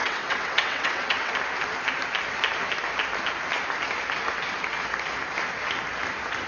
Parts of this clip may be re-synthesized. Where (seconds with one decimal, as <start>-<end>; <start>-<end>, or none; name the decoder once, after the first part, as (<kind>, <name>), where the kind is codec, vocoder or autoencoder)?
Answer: 0.0-1.3 (vocoder, WaveNeXt)